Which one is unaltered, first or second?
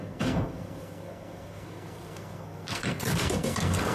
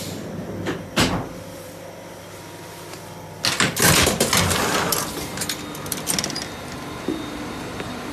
second